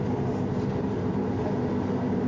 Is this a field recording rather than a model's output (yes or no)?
yes